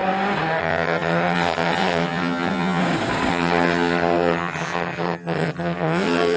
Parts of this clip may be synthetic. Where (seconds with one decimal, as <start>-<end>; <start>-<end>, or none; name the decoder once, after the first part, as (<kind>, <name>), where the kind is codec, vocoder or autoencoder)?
0.6-2.8 (vocoder, HiFi-GAN); 3.3-6.4